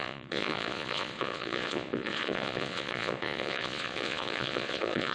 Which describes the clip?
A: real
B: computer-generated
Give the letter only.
B